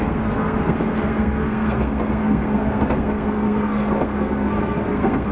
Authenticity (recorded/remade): remade